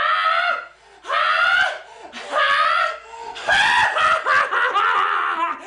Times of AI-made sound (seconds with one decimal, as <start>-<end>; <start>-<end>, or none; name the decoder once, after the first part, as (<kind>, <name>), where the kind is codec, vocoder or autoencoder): 2.8-3.5 (codec, SNAC)